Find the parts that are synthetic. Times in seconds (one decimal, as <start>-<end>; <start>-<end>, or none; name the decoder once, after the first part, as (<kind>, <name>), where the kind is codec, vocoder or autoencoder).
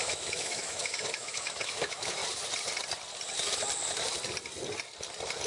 0.0-2.2 (autoencoder, DAC-VAE)